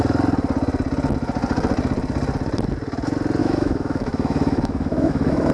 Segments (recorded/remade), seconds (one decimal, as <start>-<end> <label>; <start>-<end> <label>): 0.0-3.4 recorded; 3.4-5.5 remade